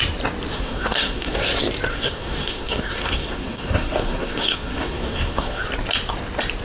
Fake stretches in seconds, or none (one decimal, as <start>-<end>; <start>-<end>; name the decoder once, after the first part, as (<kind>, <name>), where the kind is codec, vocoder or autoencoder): 0.5-1.4 (codec, SNAC); 1.9-5.7

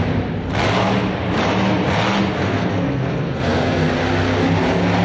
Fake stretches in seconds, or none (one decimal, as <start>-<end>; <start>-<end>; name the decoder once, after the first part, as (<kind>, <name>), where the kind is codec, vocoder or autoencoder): 2.4-3.9 (codec, SNAC)

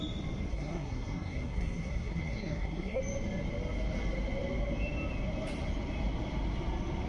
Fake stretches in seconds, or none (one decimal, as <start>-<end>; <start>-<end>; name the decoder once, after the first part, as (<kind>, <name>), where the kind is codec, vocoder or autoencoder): 0.5-3.0 (codec, SNAC)

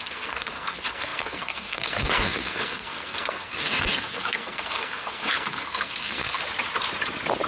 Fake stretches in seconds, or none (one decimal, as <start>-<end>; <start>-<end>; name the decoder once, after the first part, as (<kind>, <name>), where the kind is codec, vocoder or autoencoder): 0.0-6.4 (codec, SNAC)

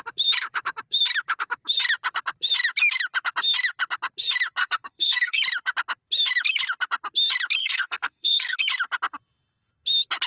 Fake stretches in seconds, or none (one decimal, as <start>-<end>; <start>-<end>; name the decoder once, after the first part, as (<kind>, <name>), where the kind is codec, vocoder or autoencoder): 4.6-5.4 (codec, SNAC); 7.6-8.6

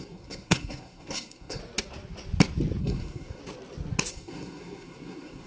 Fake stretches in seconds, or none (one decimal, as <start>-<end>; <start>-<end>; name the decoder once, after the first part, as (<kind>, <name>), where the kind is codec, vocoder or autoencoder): 0.0-1.6 (codec, SNAC); 2.8-3.4; 4.1-5.5

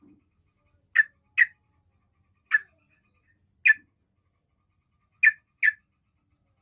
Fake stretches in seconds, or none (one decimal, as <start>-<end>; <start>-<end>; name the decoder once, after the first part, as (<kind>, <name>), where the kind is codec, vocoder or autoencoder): none